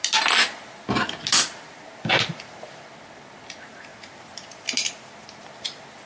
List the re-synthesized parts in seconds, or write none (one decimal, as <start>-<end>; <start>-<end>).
none